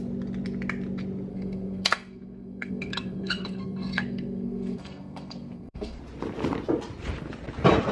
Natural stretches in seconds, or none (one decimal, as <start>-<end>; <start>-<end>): 0.0-1.3; 6.0-7.9